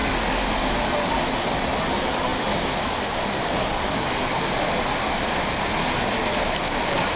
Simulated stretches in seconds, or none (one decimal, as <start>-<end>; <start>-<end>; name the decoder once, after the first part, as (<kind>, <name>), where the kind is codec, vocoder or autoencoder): none